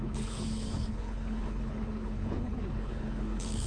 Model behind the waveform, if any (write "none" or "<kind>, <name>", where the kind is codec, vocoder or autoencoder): codec, HILCodec